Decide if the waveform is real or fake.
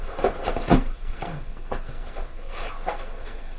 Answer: fake